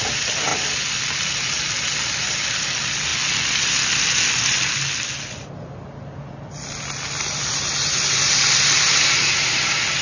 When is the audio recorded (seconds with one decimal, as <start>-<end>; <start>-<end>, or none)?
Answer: 0.0-10.0